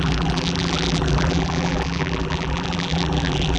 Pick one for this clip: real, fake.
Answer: fake